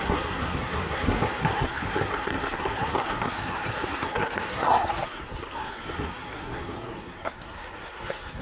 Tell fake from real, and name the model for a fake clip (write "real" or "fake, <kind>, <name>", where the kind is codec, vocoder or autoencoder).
fake, codec, SNAC